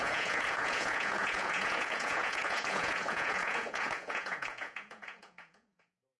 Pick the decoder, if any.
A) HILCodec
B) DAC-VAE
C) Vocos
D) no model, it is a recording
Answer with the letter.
C